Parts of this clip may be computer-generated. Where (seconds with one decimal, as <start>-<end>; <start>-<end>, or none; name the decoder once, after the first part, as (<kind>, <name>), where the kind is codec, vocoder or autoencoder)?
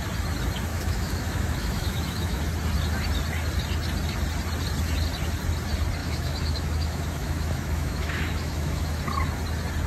0.7-2.4 (autoencoder, DAC-VAE); 6.0-9.0